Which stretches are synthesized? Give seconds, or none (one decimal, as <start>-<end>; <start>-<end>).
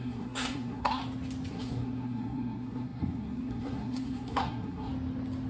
0.0-1.0; 1.5-4.9